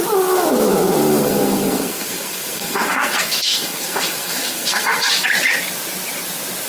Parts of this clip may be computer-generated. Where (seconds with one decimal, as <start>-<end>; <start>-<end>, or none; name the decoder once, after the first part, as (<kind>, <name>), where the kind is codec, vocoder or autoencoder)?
1.1-5.1 (codec, SNAC)